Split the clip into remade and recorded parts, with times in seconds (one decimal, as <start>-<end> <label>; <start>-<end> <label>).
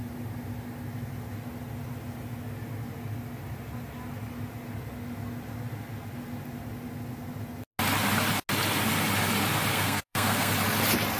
0.0-9.7 recorded; 9.7-10.5 remade; 10.5-11.2 recorded